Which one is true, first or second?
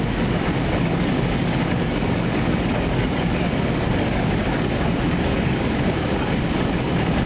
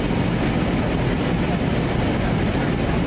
second